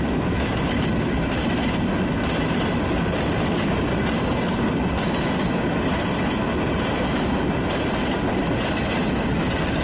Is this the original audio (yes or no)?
yes